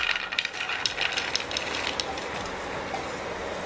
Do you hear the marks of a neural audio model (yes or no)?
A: no